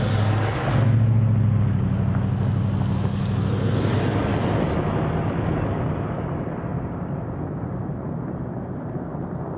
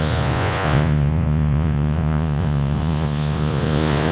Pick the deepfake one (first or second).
second